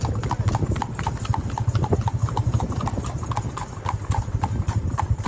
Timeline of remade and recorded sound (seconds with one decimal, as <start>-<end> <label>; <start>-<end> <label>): 0.0-2.2 recorded; 2.2-3.0 remade; 3.0-5.3 recorded